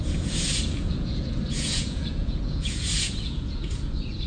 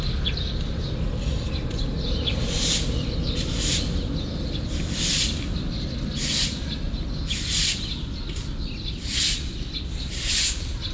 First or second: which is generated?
first